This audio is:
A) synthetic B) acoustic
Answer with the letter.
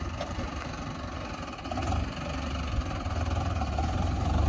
B